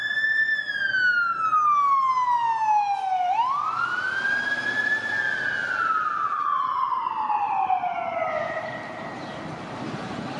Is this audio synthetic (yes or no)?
no